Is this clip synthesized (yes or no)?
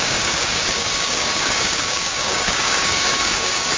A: yes